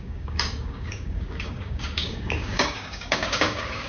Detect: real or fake fake